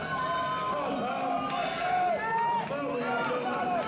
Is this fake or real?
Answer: real